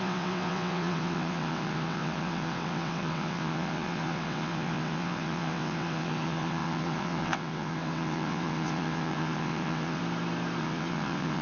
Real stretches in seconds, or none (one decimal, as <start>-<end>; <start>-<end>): 10.0-10.6